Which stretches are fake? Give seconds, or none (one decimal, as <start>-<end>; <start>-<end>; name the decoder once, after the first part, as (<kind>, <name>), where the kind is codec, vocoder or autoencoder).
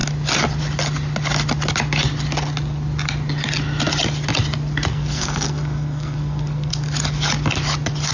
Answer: 4.9-6.7 (codec, SNAC)